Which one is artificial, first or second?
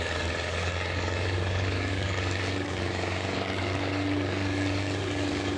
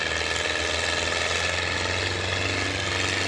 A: first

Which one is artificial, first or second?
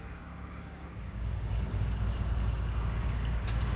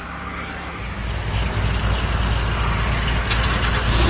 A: first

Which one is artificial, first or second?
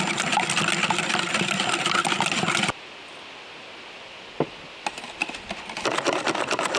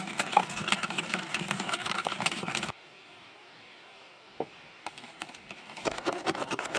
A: second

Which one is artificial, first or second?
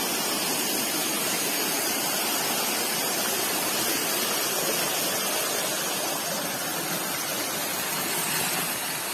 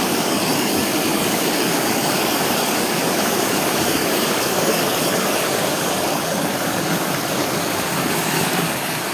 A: second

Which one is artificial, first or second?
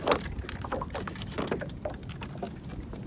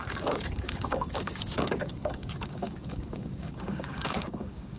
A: second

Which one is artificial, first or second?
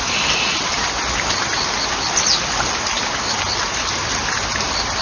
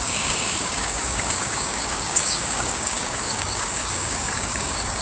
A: second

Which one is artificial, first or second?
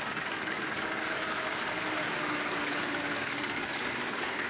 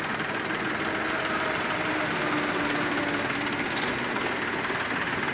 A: first